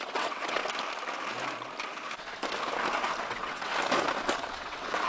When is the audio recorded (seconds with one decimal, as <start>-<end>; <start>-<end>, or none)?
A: 0.6-3.3; 3.7-4.5